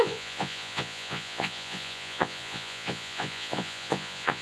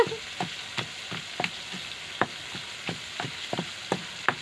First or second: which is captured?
second